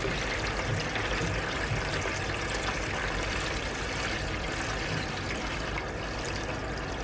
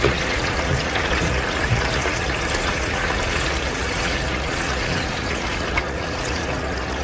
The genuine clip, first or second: first